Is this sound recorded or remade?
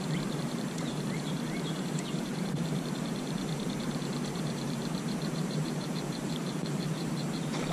remade